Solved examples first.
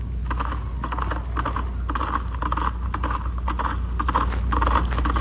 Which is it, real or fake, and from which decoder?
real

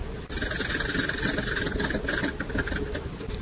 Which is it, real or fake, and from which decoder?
real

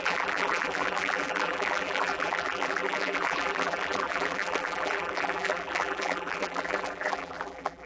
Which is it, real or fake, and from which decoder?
fake, vocoder, BigVGAN v2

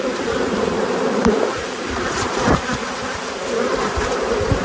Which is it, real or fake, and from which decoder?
fake, vocoder, BigVGAN v2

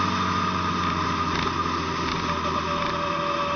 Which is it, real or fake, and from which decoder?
real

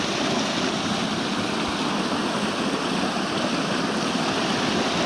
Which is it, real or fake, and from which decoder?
real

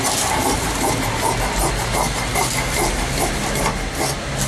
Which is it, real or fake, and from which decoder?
real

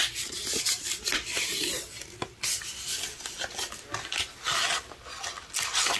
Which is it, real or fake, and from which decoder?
real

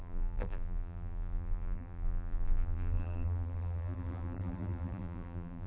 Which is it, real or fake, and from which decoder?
fake, vocoder, BigVGAN v2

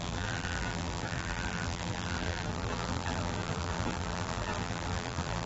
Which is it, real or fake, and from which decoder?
fake, vocoder, BigVGAN v2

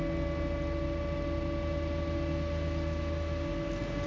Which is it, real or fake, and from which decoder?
real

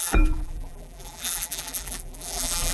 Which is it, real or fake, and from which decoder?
fake, vocoder, BigVGAN v2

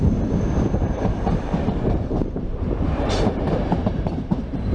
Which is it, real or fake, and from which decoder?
fake, vocoder, BigVGAN v2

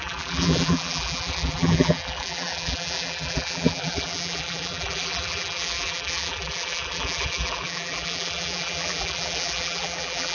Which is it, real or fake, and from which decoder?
fake, vocoder, BigVGAN v2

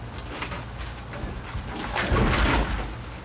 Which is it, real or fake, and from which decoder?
real